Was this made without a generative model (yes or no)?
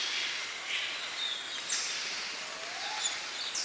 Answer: yes